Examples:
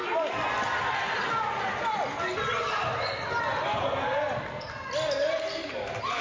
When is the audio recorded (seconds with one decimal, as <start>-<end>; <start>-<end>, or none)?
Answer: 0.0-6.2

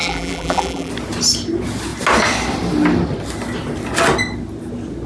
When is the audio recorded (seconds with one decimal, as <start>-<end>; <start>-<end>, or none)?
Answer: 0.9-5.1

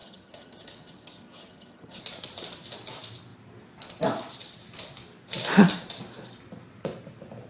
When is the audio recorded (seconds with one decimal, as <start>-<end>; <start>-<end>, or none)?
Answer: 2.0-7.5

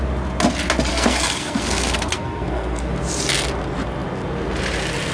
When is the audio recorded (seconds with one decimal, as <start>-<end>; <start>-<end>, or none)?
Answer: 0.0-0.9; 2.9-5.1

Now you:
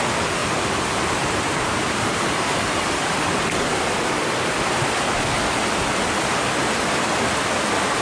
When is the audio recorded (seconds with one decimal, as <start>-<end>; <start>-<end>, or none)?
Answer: 0.0-0.4; 3.3-8.0

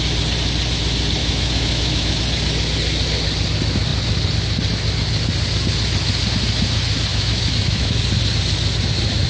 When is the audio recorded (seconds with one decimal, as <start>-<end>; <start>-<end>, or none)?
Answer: 0.0-1.2; 2.2-7.1; 8.0-9.3